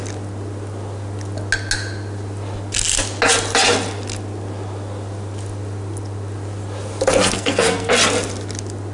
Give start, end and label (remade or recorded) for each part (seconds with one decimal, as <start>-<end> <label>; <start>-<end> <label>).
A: 0.0-7.2 recorded; 7.2-7.9 remade; 7.9-8.9 recorded